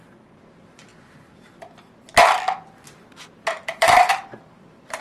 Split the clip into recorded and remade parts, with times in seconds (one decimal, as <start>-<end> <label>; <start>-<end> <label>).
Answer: 0.0-0.9 remade; 0.9-3.2 recorded; 3.2-5.0 remade